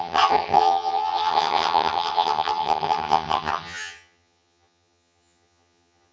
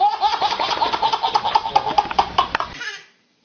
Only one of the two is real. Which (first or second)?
second